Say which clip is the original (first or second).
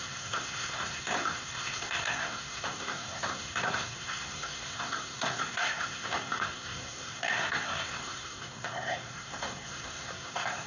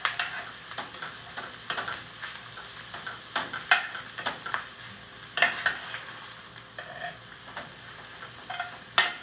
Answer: second